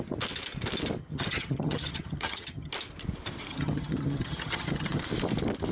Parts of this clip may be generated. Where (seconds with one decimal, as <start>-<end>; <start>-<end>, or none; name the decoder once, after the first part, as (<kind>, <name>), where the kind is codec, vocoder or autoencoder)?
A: 1.0-2.7 (vocoder, HiFi-GAN); 3.5-5.0